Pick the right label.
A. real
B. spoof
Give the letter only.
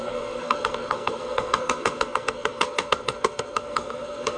B